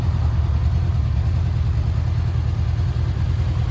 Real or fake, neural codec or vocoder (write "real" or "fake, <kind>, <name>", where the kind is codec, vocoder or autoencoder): real